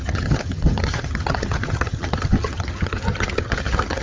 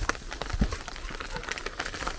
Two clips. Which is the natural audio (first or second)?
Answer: second